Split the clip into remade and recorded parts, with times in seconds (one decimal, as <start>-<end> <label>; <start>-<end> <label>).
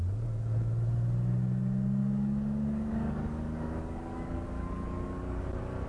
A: 0.0-2.0 recorded; 2.0-5.4 remade; 5.4-5.9 recorded